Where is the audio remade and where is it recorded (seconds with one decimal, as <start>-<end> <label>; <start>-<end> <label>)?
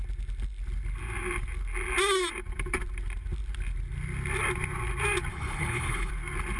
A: 0.0-5.3 recorded; 5.3-6.1 remade; 6.1-6.6 recorded